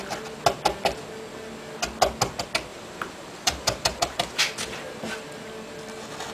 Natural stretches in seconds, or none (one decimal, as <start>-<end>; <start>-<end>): 0.0-2.7; 4.4-6.3